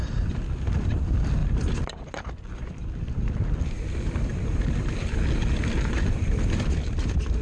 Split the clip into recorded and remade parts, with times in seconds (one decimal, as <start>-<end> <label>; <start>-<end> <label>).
0.0-4.3 remade; 4.3-5.9 recorded; 5.9-7.4 remade